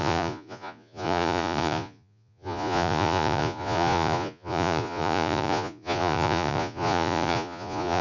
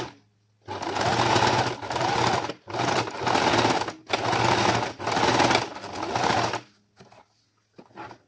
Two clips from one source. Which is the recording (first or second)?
second